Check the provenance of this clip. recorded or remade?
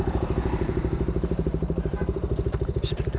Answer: remade